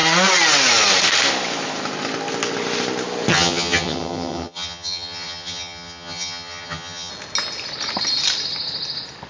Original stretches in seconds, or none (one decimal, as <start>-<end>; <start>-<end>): 0.0-3.3; 7.1-9.3